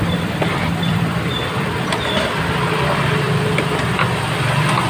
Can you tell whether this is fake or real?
fake